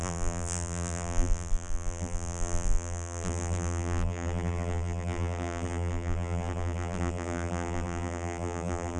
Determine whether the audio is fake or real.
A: fake